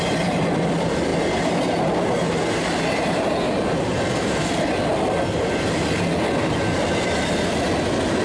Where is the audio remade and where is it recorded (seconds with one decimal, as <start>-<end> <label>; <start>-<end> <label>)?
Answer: 0.0-8.2 recorded